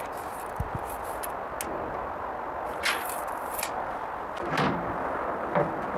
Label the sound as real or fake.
real